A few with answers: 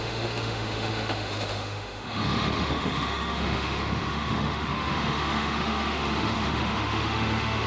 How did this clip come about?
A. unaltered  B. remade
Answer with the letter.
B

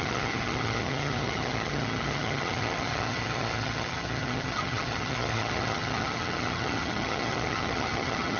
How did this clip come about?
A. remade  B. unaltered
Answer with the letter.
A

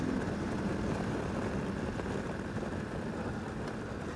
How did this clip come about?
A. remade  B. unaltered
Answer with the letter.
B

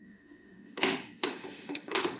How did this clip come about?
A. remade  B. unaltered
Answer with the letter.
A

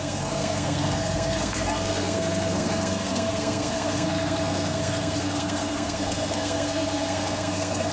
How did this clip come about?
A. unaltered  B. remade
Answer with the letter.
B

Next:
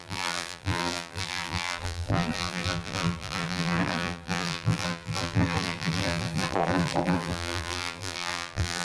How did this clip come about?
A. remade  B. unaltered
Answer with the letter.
A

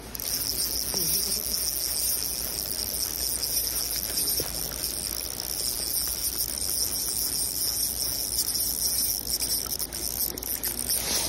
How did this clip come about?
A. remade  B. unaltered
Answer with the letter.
B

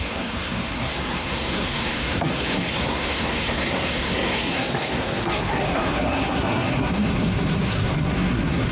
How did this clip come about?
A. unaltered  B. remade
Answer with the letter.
B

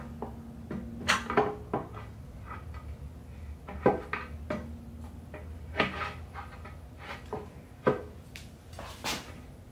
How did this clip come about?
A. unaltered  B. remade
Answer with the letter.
A